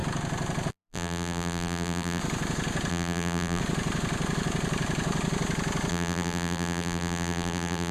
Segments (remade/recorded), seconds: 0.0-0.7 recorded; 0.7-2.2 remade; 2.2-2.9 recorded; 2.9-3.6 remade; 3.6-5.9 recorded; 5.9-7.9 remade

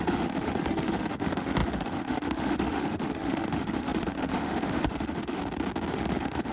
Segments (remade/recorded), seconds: 0.0-5.4 remade; 5.4-5.9 recorded; 5.9-6.5 remade